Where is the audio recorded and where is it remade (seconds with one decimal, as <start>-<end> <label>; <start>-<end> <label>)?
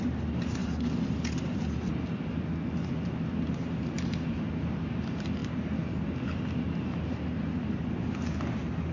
0.0-8.9 recorded